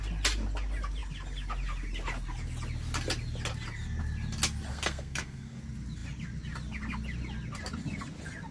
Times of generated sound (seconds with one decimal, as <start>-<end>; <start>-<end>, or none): 4.7-5.6